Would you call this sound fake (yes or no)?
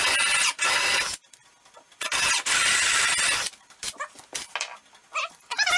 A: no